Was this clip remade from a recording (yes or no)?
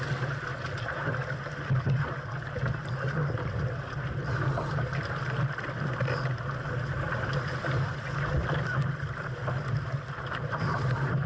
no